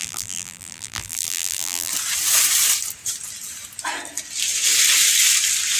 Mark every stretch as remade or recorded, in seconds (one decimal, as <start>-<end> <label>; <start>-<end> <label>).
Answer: 0.0-1.9 remade; 1.9-5.8 recorded